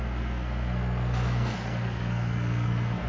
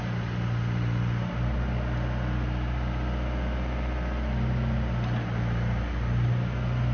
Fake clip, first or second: first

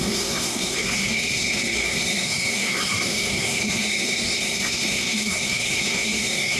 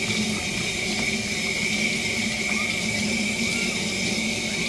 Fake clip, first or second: first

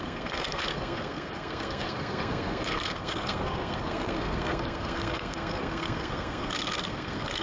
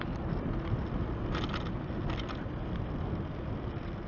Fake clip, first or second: first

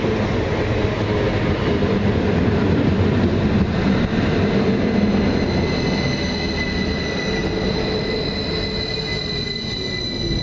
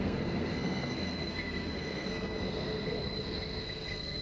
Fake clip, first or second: second